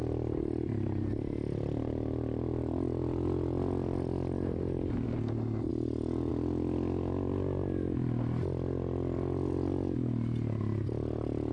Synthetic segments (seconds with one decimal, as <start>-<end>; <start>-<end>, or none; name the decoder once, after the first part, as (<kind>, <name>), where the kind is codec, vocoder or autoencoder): none

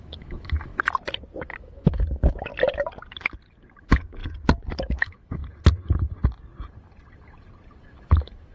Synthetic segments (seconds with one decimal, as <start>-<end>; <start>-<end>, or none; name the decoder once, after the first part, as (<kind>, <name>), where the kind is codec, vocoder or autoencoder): 0.0-0.7 (autoencoder, DAC-VAE); 1.5-2.5; 3.8-4.2; 4.8-5.4; 7.8-8.5

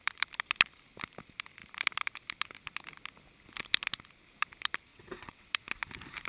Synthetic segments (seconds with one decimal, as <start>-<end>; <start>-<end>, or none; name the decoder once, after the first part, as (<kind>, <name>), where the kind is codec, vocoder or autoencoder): 4.9-5.6 (vocoder, WaveNeXt)

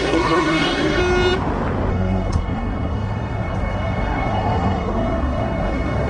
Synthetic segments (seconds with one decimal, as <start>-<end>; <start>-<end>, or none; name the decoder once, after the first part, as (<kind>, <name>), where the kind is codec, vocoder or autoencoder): 0.0-1.0 (codec, SNAC); 1.9-6.1

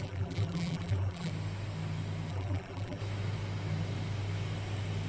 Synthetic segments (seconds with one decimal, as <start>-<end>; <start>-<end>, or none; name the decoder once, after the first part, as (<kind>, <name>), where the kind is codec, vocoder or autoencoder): 0.0-1.3 (vocoder, BigVGAN v2); 2.3-3.0

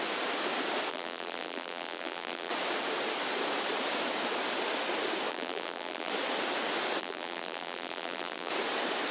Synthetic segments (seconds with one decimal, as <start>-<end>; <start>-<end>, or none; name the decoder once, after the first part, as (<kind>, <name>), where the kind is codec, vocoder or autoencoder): 0.9-2.5 (vocoder, BigVGAN v2); 5.3-6.1; 7.0-8.5

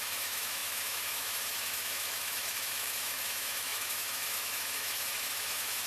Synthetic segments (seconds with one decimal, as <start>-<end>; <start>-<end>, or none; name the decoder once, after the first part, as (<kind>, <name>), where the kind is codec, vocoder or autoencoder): 0.0-5.9 (autoencoder, DAC-VAE)